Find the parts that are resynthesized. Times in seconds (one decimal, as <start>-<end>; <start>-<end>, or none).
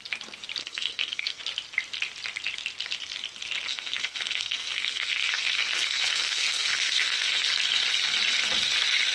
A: 0.6-1.4; 3.7-7.5